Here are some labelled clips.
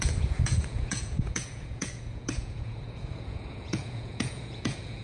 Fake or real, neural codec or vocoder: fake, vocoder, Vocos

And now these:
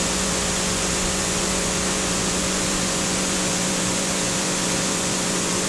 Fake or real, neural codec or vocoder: fake, vocoder, Vocos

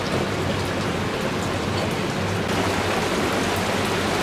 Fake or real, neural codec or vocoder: real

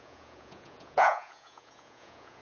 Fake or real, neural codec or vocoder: fake, vocoder, Vocos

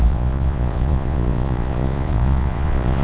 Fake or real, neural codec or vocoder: fake, vocoder, Vocos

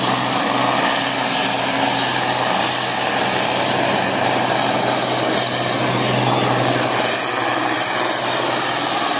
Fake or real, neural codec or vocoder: real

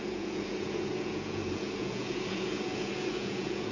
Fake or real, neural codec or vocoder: fake, vocoder, Vocos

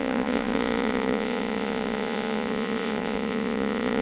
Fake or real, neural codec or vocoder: fake, vocoder, Vocos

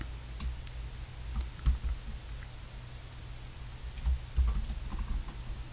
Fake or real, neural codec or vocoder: real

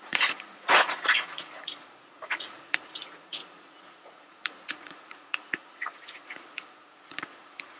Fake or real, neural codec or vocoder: fake, vocoder, Vocos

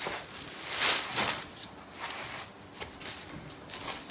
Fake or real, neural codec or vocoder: real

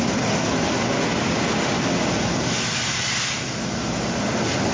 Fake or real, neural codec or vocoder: real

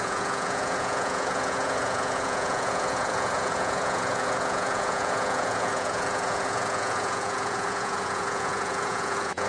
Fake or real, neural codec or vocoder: fake, vocoder, Vocos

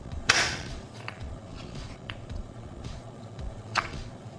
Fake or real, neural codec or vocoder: fake, vocoder, Vocos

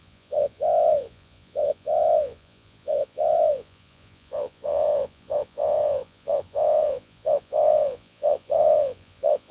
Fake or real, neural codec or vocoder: fake, vocoder, Vocos